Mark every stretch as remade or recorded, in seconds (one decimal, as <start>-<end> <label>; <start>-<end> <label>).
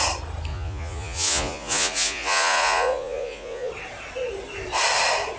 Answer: 0.0-0.5 recorded; 0.5-3.7 remade; 3.7-5.4 recorded